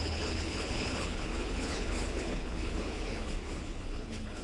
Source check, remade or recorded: remade